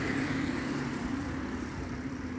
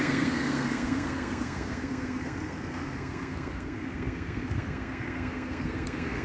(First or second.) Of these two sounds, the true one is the first